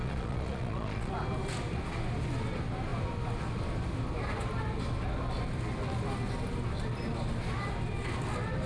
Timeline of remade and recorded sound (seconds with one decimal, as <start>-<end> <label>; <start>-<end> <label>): 0.0-1.1 remade; 1.1-8.7 recorded